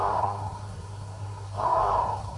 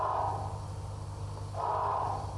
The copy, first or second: first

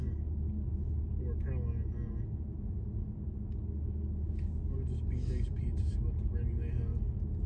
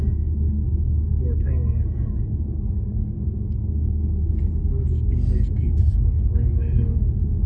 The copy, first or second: second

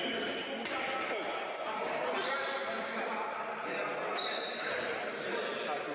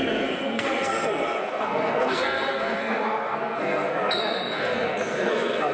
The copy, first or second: second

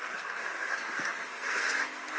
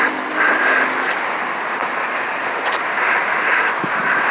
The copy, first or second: first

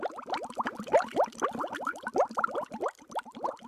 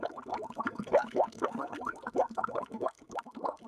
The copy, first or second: second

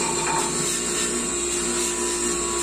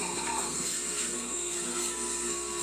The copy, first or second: second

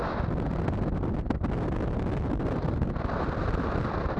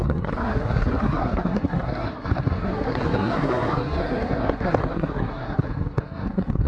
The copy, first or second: second